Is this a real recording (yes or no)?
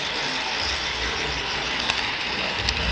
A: yes